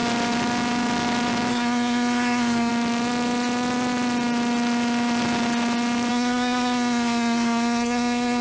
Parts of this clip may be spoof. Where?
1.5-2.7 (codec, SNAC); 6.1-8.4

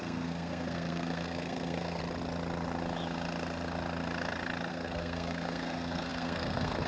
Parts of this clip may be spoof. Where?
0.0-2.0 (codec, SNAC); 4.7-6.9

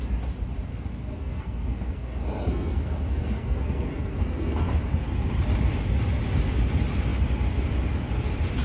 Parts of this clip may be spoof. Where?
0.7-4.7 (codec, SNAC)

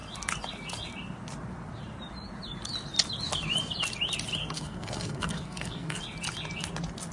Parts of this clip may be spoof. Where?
4.4-6.0 (codec, SNAC)

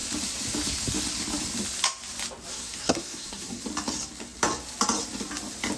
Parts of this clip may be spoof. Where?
2.5-3.6 (codec, SNAC)